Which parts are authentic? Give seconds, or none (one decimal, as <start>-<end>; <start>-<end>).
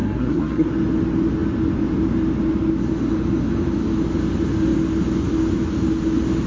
0.7-6.5